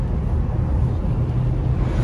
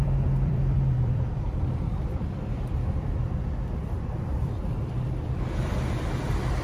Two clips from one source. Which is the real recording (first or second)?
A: first